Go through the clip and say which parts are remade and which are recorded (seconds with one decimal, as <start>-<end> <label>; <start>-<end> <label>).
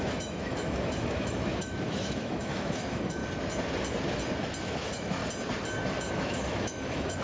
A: 0.0-3.2 remade; 3.2-4.6 recorded; 4.6-5.2 remade; 5.2-6.1 recorded; 6.1-7.2 remade